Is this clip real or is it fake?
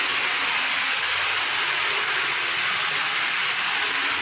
real